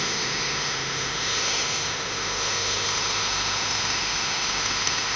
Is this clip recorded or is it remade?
remade